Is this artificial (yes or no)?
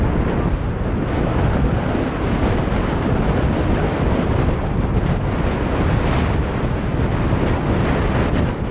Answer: no